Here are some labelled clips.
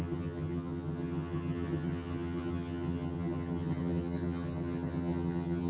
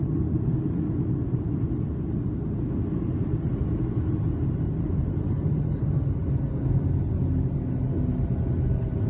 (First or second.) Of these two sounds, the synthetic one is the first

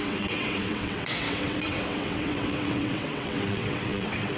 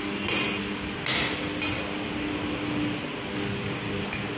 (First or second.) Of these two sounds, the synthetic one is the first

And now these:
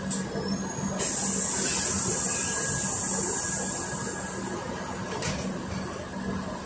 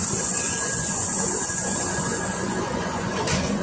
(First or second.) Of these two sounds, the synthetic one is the second